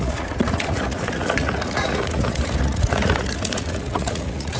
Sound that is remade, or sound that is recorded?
remade